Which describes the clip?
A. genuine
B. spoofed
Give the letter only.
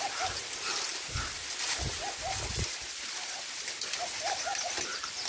A